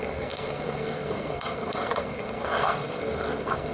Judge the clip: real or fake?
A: fake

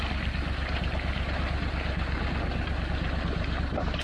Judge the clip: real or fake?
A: real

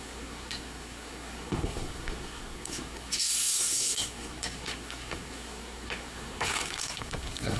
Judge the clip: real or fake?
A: fake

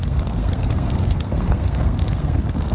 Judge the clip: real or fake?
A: fake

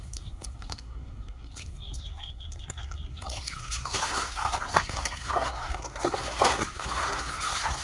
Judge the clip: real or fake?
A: fake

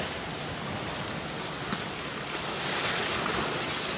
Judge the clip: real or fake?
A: real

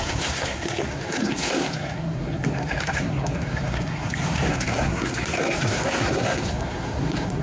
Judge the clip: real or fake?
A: fake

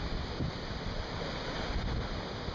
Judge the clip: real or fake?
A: real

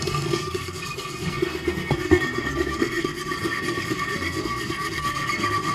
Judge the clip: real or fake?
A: fake